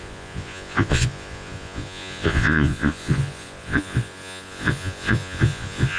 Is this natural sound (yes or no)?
no